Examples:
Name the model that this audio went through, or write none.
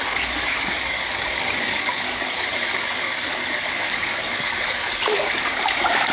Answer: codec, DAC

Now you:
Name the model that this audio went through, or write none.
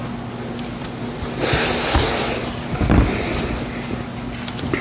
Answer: none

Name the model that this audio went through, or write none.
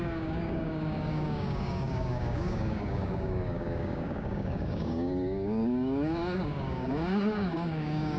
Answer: codec, DAC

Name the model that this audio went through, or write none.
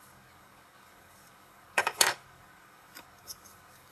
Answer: codec, DAC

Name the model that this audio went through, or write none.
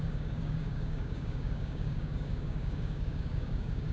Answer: codec, DAC